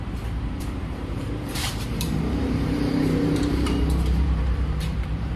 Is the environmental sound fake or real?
fake